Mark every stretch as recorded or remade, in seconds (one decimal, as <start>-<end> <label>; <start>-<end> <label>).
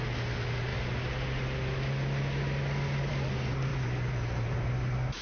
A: 0.0-3.7 recorded; 3.7-4.7 remade; 4.7-5.2 recorded